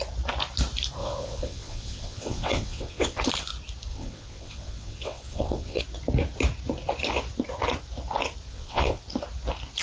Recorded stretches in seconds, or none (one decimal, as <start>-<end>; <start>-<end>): 0.0-1.0; 3.2-3.9; 5.8-8.5; 9.0-9.8